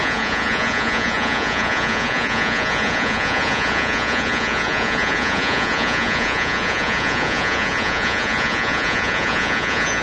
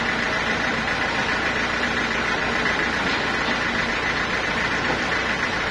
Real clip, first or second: second